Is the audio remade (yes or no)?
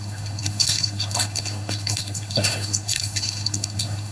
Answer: yes